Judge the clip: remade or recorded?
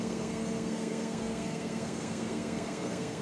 remade